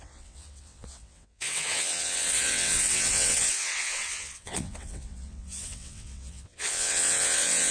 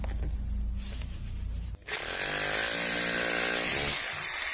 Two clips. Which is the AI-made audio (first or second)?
first